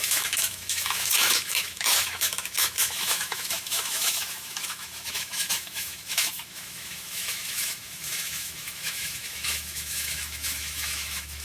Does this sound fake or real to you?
fake